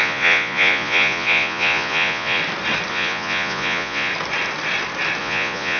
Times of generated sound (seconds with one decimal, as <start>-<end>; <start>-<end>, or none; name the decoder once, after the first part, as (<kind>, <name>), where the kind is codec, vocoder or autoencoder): 0.0-2.4 (vocoder, Vocos); 2.9-4.1; 5.2-5.8